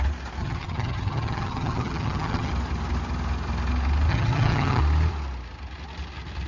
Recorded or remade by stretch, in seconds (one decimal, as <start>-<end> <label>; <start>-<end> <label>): 0.0-0.4 recorded; 0.4-2.5 remade; 2.5-4.1 recorded; 4.1-4.8 remade; 4.8-6.5 recorded